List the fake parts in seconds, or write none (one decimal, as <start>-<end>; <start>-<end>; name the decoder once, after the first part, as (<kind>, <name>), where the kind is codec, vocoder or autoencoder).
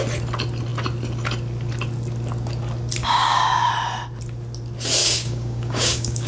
3.0-3.7 (codec, DAC); 5.0-6.3